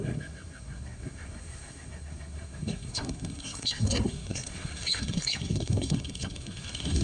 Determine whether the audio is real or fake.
fake